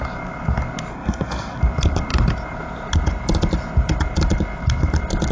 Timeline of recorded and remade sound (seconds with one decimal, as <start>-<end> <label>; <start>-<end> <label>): 0.0-0.9 recorded; 0.9-1.6 remade; 1.6-5.3 recorded